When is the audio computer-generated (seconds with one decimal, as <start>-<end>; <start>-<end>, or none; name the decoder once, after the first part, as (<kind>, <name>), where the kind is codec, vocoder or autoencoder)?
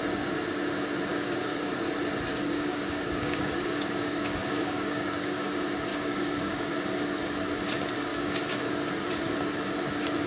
1.1-1.7 (codec, DAC); 2.3-5.5; 5.9-6.7; 8.1-8.9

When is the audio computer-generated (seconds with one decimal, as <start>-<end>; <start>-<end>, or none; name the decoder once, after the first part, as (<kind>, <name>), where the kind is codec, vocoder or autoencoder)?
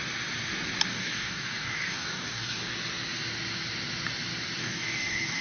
0.9-2.7 (codec, DAC); 4.6-5.4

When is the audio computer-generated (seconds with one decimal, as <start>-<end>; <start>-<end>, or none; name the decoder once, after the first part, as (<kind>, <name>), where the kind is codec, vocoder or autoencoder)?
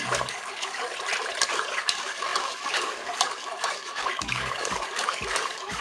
0.0-0.9 (codec, DAC); 1.5-5.8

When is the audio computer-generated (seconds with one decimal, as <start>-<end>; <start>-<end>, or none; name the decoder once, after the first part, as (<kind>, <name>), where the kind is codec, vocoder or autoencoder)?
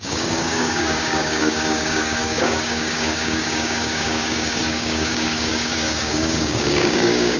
0.0-7.4 (codec, DAC)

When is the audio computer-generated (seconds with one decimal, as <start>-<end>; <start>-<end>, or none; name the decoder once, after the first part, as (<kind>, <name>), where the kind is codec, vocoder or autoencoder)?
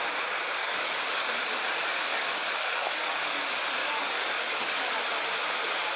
0.6-1.2 (codec, DAC); 2.1-3.4; 3.8-4.9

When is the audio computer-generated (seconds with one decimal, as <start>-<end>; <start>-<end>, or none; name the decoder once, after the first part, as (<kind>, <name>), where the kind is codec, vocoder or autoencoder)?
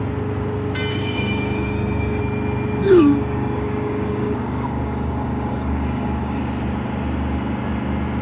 0.9-2.2 (codec, DAC); 2.9-6.4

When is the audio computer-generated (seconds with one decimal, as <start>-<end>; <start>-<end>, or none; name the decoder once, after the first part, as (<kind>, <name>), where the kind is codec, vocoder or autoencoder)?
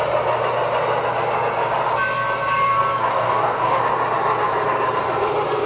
3.1-3.8 (codec, DAC)